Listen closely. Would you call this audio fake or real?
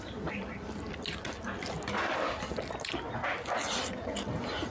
real